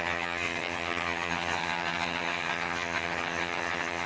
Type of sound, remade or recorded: remade